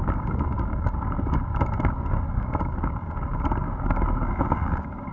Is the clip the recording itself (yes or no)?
no